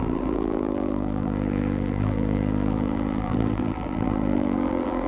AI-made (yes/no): yes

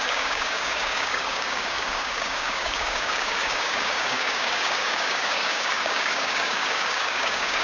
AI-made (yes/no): yes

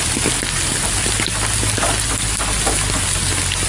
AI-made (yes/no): no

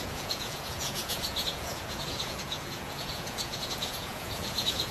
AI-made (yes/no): yes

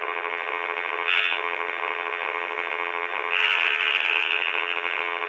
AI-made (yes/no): yes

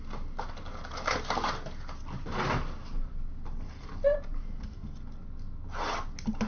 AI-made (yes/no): no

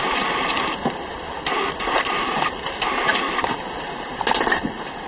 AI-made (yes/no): no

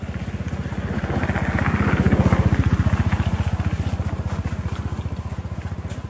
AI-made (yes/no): no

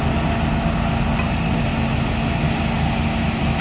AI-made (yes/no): no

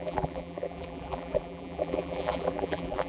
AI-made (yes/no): yes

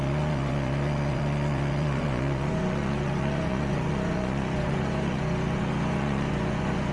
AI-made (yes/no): yes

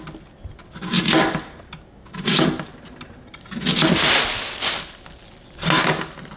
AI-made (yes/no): no